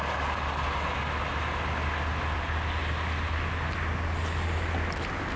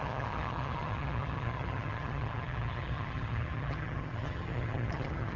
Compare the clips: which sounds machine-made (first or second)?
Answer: second